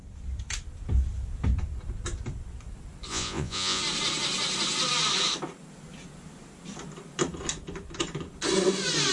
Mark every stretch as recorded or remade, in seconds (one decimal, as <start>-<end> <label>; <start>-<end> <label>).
0.0-3.1 recorded; 3.1-3.8 remade; 3.8-9.1 recorded